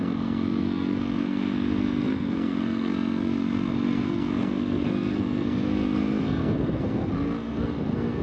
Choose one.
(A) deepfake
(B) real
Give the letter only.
A